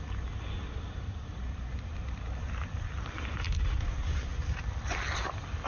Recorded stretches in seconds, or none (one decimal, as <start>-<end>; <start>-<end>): 0.0-5.7